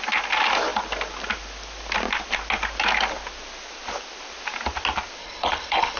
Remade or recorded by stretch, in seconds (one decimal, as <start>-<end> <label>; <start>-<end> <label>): 0.0-5.2 recorded; 5.2-6.0 remade